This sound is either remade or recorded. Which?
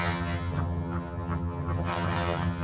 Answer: remade